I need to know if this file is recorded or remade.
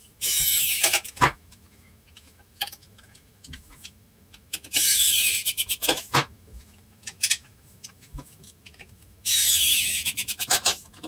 remade